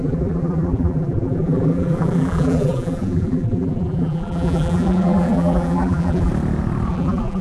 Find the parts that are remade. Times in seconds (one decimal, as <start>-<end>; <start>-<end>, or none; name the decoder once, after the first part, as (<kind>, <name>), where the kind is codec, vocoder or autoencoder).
0.0-6.3 (vocoder, BigVGAN v2); 6.9-7.4